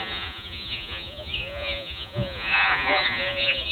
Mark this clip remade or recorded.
remade